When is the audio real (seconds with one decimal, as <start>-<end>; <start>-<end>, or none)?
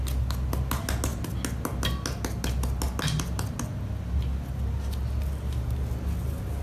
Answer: 0.0-6.6